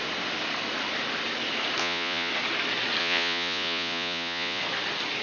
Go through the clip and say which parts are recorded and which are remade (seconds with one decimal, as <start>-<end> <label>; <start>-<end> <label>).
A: 0.0-1.8 recorded; 1.8-2.3 remade; 2.3-3.0 recorded; 3.0-4.6 remade; 4.6-5.2 recorded

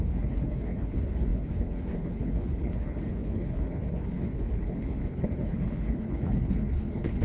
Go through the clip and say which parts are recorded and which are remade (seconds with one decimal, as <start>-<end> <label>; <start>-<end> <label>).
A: 0.0-7.2 remade

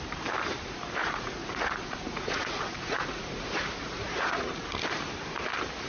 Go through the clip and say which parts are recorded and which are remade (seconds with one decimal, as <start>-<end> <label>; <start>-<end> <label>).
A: 0.0-1.0 recorded; 1.0-4.5 remade; 4.5-5.9 recorded

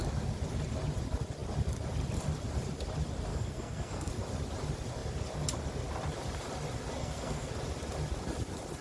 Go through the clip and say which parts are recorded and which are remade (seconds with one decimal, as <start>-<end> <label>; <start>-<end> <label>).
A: 0.0-3.3 recorded; 3.3-4.1 remade; 4.1-7.0 recorded; 7.0-7.5 remade; 7.5-8.8 recorded

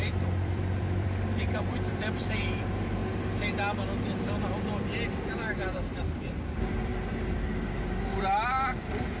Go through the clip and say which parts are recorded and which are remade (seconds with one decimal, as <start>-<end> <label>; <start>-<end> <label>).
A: 0.0-3.0 remade; 3.0-5.1 recorded; 5.1-6.9 remade; 6.9-8.1 recorded; 8.1-9.2 remade

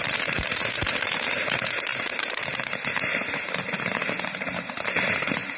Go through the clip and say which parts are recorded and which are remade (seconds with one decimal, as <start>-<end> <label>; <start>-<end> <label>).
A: 0.0-5.6 remade

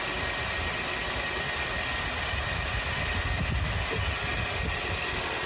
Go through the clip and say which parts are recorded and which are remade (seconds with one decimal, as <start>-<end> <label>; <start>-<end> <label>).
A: 0.0-5.5 recorded

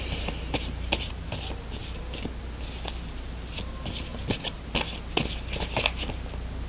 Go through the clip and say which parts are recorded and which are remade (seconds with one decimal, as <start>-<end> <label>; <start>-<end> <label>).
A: 0.0-6.7 recorded